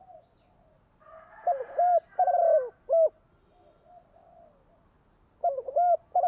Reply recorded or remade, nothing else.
recorded